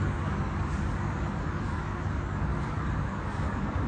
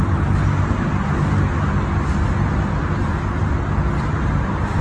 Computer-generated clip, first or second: first